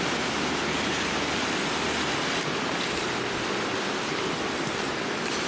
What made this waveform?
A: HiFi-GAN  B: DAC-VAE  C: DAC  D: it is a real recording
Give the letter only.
D